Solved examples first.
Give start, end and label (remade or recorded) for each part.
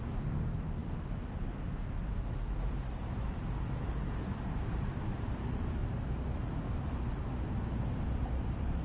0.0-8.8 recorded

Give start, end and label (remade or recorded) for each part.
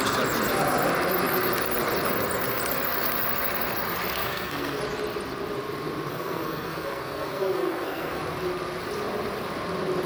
0.0-4.2 recorded; 4.2-4.8 remade; 4.8-6.1 recorded; 6.1-8.2 remade; 8.2-10.1 recorded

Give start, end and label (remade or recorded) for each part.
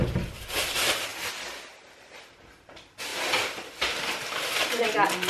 0.0-5.3 recorded